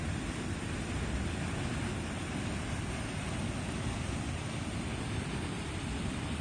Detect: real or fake real